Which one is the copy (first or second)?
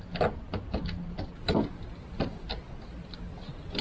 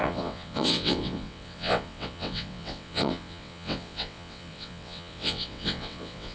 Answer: second